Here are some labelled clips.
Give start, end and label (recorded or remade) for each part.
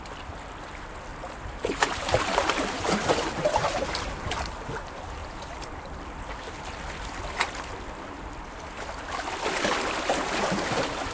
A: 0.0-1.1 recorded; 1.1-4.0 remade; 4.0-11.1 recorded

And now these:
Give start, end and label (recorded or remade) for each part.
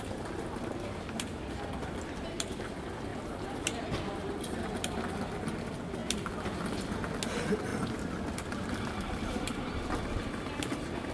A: 0.0-7.7 recorded; 7.7-10.0 remade; 10.0-11.1 recorded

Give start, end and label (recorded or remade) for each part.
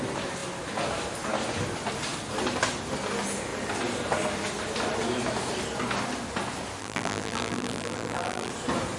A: 0.0-6.8 recorded; 6.8-8.5 remade; 8.5-9.0 recorded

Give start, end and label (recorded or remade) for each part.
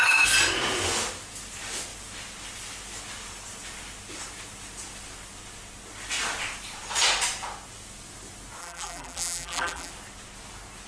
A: 0.0-8.6 recorded; 8.6-9.9 remade; 9.9-10.9 recorded